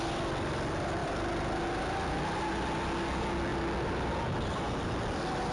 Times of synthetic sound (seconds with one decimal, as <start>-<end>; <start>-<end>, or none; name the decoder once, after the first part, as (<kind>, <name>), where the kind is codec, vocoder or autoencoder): none